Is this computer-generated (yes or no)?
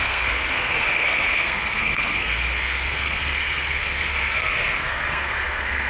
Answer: yes